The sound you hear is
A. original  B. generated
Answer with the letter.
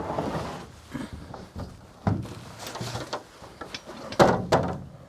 A